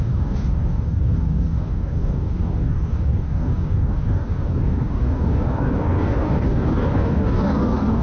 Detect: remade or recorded remade